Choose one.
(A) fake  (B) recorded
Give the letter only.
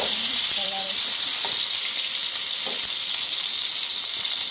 A